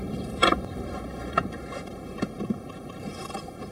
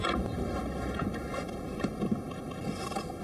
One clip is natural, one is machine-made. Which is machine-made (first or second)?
first